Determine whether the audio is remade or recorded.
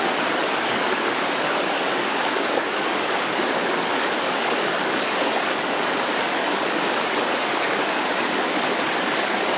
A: remade